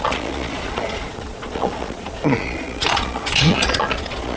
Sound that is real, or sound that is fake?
fake